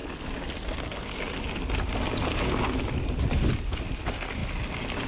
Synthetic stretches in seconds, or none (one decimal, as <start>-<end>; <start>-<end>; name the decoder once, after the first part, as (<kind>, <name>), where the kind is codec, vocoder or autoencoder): none